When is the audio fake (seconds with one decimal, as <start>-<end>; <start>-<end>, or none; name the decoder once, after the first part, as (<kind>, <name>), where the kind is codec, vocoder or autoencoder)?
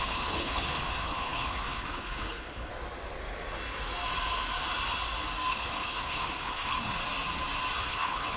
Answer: 0.0-2.7 (codec, HILCodec); 5.5-7.0; 7.8-8.4